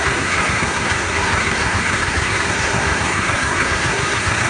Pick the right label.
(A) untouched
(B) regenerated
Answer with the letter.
B